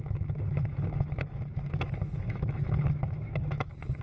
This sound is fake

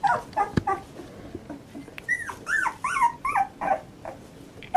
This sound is real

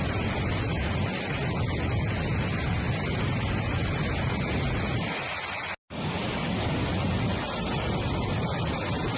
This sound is real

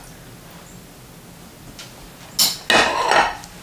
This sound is real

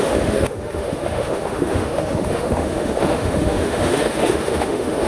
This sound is fake